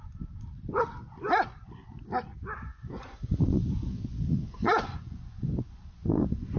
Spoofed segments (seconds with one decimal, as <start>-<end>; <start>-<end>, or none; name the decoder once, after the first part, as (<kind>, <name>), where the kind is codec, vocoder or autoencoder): 2.7-6.6 (vocoder, Vocos)